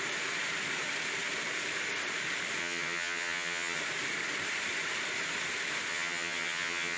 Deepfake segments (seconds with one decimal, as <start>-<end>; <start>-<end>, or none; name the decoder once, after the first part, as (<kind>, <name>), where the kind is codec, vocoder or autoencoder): 2.6-3.8 (vocoder, HiFi-GAN); 5.9-7.0